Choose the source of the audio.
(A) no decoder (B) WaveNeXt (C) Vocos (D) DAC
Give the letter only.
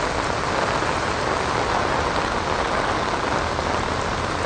A